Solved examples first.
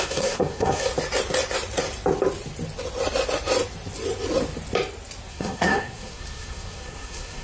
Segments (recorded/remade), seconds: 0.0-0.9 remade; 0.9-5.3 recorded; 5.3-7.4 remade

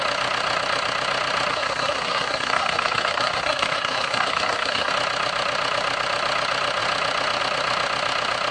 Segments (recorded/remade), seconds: 0.0-1.5 recorded; 1.5-4.9 remade; 4.9-8.5 recorded

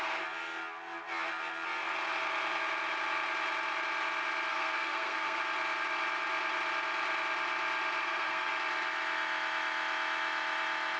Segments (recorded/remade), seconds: 0.0-4.5 recorded; 4.5-5.4 remade; 5.4-8.0 recorded; 8.0-8.5 remade; 8.5-11.0 recorded

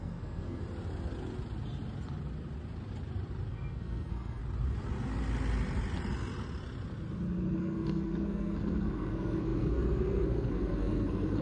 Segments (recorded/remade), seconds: 0.0-0.6 remade; 0.6-3.5 recorded; 3.5-4.4 remade; 4.4-7.6 recorded; 7.6-11.4 remade

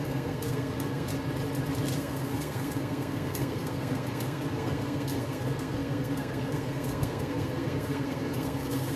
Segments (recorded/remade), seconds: 0.0-1.1 remade; 1.1-2.0 recorded; 2.0-9.0 remade

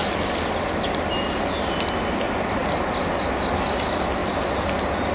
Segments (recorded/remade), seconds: 0.0-5.1 recorded

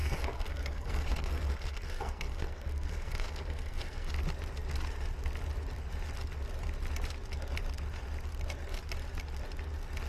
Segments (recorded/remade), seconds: 0.0-4.1 remade; 4.1-10.1 recorded

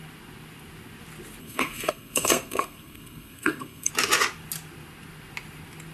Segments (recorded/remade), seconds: 0.0-1.4 recorded; 1.4-3.9 remade; 3.9-5.9 recorded